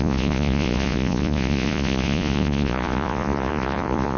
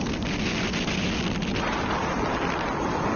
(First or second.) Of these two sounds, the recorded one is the second